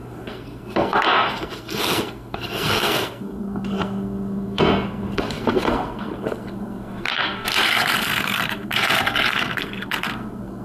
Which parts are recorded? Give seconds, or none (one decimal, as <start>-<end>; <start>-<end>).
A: none